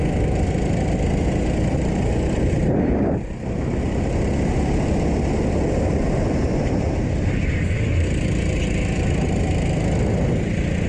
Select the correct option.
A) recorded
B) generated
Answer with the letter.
A